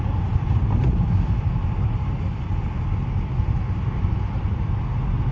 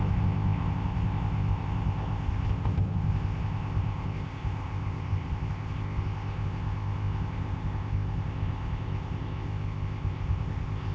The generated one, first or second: second